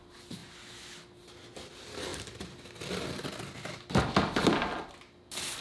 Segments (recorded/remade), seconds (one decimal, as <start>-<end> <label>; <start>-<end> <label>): 0.0-5.6 recorded